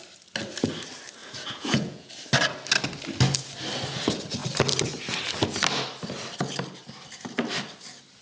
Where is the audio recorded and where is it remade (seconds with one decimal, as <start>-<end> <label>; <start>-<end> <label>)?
0.0-1.2 recorded; 1.2-2.1 remade; 2.1-8.2 recorded